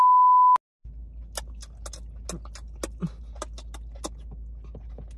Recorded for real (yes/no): yes